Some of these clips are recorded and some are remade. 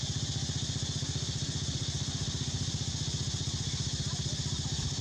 recorded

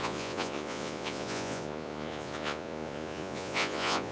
remade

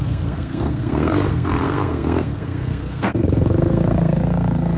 remade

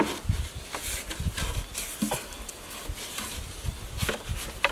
recorded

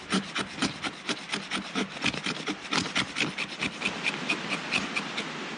recorded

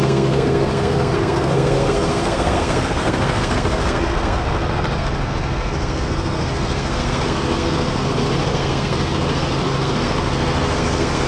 remade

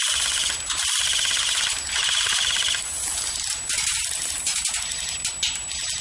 recorded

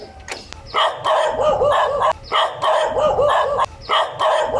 recorded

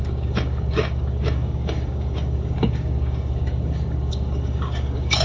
remade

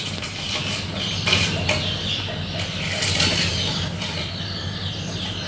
recorded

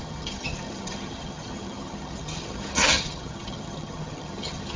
remade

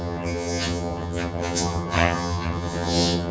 remade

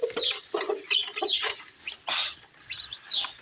recorded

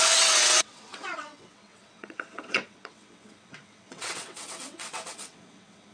remade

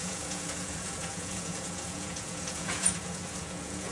remade